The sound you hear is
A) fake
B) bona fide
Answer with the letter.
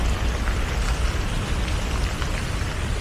B